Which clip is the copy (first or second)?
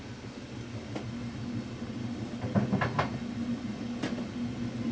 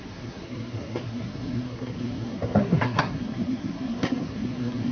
second